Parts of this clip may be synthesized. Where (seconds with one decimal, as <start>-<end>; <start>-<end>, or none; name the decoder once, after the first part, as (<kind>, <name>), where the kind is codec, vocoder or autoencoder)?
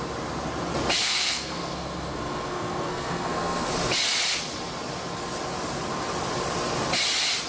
1.0-3.7 (codec, SNAC)